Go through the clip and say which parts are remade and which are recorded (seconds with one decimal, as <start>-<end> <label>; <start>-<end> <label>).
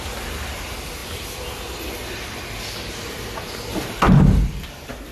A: 0.0-5.1 recorded